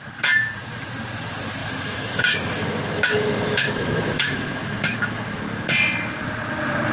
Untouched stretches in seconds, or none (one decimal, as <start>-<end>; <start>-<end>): 0.0-1.6; 5.7-6.9